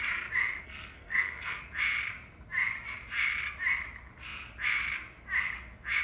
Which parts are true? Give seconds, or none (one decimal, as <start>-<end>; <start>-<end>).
0.0-0.6; 1.6-6.0